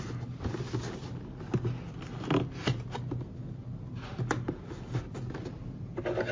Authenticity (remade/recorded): recorded